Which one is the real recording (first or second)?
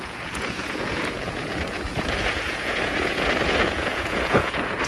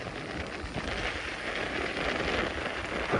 second